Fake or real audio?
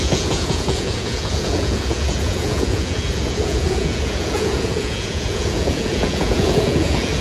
fake